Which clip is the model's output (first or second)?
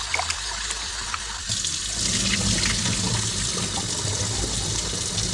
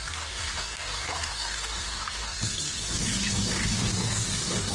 second